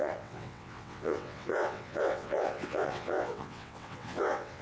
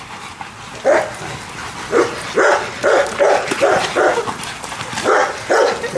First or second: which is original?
second